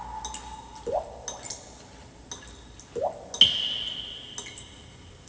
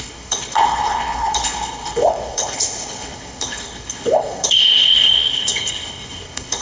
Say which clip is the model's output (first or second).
second